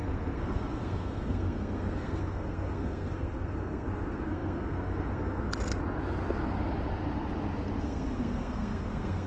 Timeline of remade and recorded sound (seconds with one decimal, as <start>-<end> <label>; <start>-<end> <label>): 0.0-5.8 remade; 5.8-7.8 recorded; 7.8-9.3 remade